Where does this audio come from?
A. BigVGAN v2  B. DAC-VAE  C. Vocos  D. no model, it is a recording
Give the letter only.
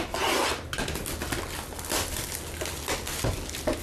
D